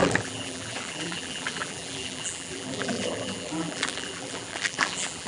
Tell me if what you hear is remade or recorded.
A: remade